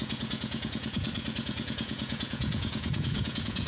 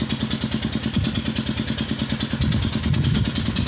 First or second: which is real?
second